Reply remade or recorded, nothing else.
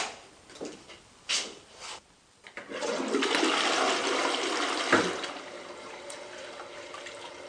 recorded